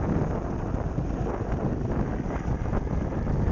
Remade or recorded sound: recorded